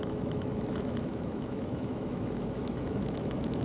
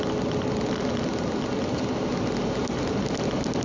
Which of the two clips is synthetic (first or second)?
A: first